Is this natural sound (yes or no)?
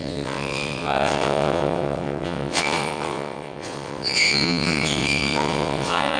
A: no